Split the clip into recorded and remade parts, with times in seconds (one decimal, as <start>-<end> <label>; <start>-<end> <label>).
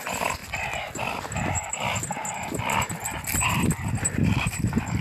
0.0-5.0 recorded